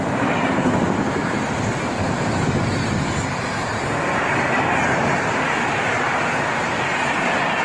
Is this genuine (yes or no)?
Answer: yes